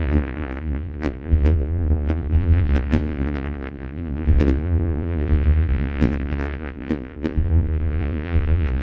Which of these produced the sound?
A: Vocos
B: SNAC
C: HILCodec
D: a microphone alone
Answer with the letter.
A